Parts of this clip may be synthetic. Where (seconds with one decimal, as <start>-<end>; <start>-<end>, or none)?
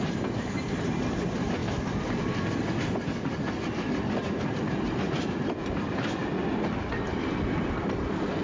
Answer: none